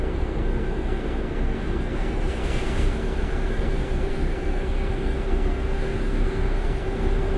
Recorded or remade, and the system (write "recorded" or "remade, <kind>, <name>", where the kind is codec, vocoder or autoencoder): remade, codec, SNAC